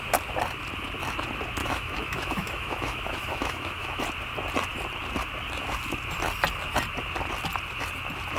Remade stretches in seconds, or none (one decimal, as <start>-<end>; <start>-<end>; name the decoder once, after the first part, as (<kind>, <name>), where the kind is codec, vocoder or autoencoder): 1.6-4.0 (autoencoder, DAC-VAE)